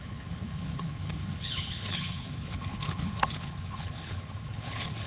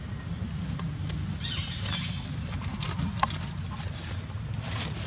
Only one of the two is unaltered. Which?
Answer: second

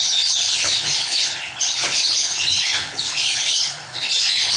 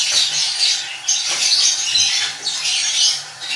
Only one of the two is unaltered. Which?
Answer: second